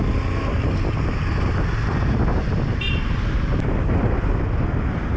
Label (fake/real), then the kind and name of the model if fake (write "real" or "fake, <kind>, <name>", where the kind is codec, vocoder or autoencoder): real